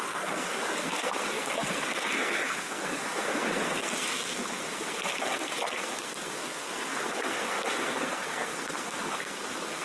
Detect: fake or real fake